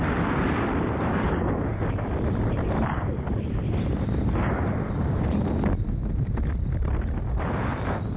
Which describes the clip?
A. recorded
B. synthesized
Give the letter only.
A